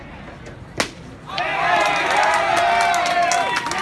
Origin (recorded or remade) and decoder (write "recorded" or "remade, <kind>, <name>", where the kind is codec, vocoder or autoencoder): recorded